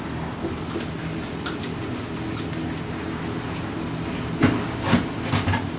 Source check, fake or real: real